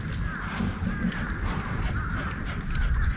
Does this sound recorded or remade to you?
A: recorded